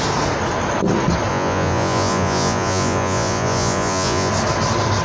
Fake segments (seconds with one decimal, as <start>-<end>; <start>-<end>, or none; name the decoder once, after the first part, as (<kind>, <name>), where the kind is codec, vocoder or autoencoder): 1.3-4.3 (vocoder, Vocos)